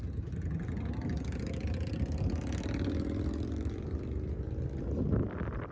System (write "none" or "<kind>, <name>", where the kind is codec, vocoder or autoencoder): none